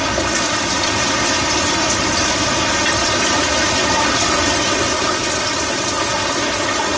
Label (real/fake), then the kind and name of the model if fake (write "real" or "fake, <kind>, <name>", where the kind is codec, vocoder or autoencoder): real